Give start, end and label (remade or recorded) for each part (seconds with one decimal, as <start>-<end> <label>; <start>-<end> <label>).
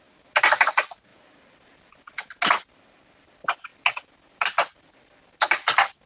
0.0-6.1 recorded